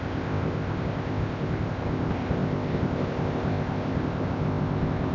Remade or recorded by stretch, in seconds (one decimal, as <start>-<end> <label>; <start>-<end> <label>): 0.0-5.1 remade